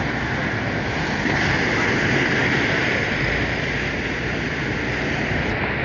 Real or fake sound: real